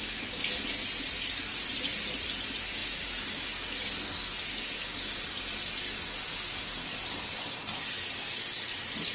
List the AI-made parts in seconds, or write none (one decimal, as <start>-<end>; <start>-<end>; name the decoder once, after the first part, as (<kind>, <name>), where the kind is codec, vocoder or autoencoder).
none